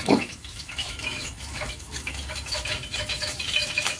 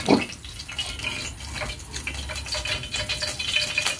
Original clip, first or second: second